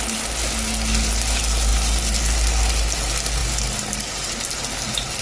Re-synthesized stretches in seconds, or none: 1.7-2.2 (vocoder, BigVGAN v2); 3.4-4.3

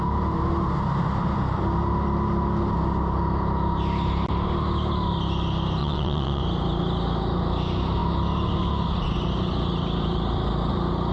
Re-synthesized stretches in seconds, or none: 5.8-6.4 (vocoder, WaveNeXt)

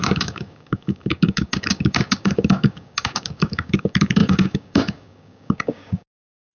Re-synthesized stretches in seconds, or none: 0.0-6.5 (codec, DAC)